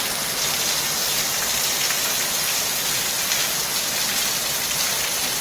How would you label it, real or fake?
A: fake